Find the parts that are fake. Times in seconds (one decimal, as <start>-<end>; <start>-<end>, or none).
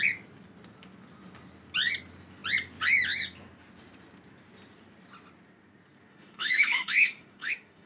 6.1-7.9